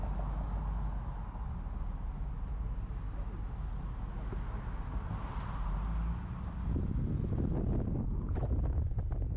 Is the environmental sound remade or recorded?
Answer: recorded